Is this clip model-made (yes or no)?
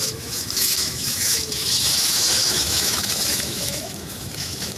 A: yes